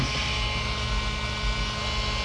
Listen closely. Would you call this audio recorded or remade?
recorded